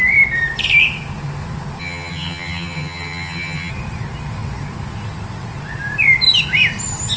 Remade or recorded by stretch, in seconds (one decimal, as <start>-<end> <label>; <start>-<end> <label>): 0.0-1.8 recorded; 1.8-3.7 remade; 3.7-7.2 recorded